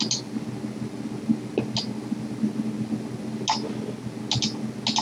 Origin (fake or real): real